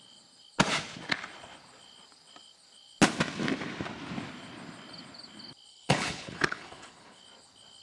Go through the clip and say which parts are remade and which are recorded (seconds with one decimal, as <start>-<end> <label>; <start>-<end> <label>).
0.0-5.7 recorded; 5.7-7.2 remade; 7.2-7.8 recorded